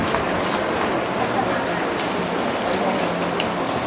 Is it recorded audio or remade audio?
recorded